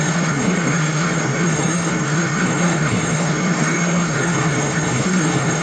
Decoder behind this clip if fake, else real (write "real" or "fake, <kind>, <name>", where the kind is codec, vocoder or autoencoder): fake, codec, SNAC